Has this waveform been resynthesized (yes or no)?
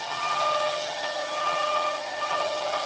yes